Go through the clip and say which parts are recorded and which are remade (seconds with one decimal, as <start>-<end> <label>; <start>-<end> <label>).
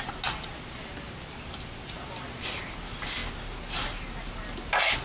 0.0-5.0 recorded